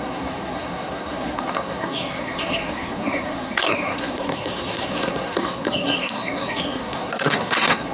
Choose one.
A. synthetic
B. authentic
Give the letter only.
A